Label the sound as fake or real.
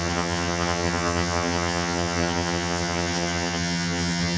fake